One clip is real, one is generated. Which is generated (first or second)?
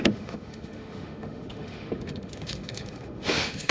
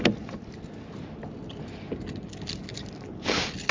first